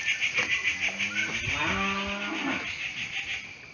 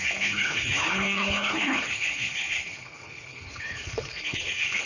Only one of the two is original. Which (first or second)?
first